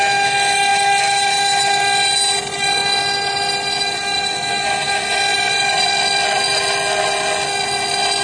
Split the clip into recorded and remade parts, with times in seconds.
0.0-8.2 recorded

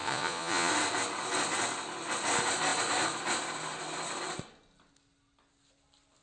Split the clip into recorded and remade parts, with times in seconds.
0.0-0.7 remade; 0.7-6.2 recorded

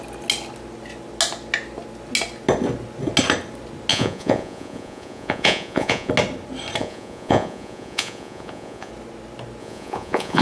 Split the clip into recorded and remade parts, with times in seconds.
0.0-3.9 recorded; 3.9-6.1 remade; 6.1-6.8 recorded; 6.8-8.9 remade; 8.9-9.6 recorded; 9.6-10.4 remade

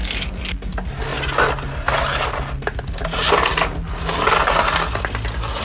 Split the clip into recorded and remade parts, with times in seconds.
0.0-5.6 recorded

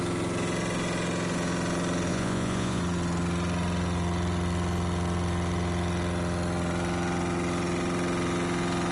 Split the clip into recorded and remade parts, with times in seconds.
0.0-2.1 recorded; 2.1-2.8 remade; 2.8-8.9 recorded